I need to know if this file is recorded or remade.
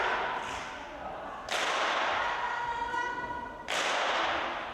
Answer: recorded